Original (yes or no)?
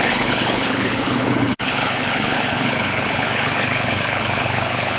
no